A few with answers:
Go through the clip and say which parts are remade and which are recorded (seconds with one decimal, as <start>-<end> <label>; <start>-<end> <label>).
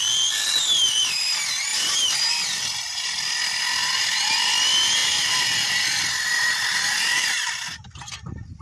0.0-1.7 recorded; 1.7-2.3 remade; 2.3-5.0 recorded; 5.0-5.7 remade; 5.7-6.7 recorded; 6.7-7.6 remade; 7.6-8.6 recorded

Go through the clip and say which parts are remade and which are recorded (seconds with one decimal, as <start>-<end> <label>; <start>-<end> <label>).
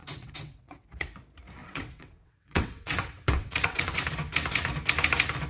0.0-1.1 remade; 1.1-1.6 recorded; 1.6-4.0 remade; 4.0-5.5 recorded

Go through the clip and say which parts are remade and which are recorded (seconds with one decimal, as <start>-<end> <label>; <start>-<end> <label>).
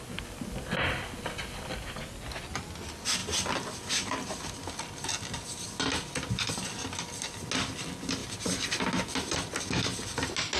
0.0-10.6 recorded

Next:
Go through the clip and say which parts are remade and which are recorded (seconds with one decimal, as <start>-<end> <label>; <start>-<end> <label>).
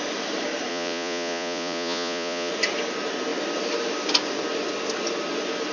0.0-0.7 recorded; 0.7-2.5 remade; 2.5-5.7 recorded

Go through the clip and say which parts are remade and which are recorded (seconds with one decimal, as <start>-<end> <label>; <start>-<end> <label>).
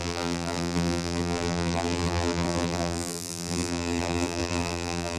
0.0-5.2 remade